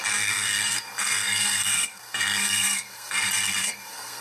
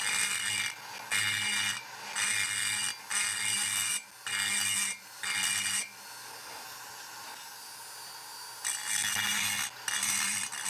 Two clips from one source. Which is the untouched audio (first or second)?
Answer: second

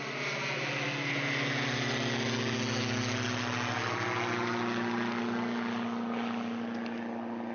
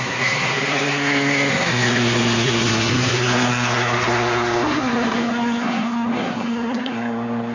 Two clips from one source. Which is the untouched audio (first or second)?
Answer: first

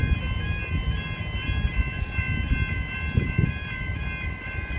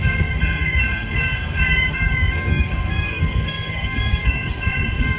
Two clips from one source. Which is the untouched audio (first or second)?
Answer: first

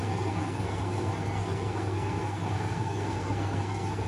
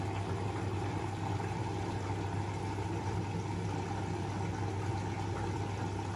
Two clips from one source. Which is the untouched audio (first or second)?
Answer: second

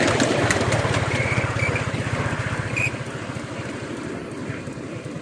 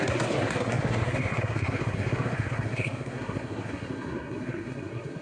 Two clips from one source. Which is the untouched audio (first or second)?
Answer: first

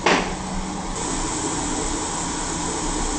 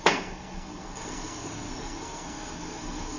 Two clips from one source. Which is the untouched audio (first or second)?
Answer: first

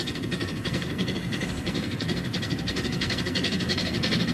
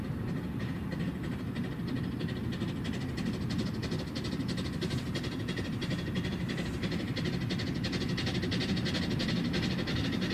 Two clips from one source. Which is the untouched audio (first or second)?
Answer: second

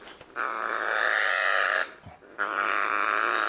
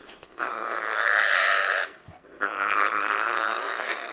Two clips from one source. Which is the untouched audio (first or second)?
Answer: first